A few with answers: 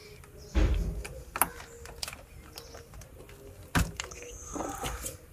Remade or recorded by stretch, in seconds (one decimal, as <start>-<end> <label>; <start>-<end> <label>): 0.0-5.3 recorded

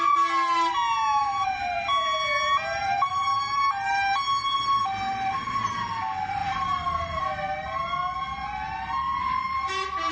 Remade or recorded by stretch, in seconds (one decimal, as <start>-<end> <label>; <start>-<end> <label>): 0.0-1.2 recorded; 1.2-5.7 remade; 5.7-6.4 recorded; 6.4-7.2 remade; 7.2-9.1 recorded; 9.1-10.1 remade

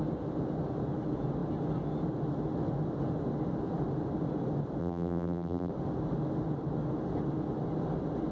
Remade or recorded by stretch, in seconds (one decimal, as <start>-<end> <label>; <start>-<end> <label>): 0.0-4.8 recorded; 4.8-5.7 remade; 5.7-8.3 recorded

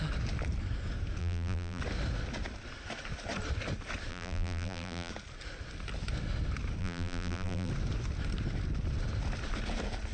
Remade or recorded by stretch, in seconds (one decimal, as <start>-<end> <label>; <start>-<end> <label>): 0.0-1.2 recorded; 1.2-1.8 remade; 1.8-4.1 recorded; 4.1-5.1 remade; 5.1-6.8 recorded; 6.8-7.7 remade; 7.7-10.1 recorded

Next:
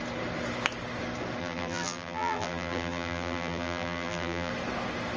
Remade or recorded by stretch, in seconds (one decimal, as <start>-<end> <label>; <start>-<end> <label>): 0.0-1.4 recorded; 1.4-4.5 remade; 4.5-5.2 recorded